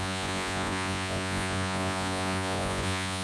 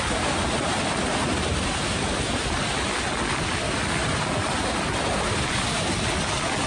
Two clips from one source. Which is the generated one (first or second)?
first